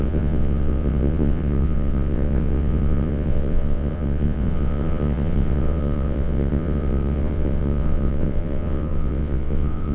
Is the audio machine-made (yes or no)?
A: yes